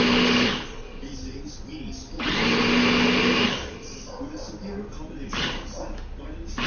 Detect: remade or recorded recorded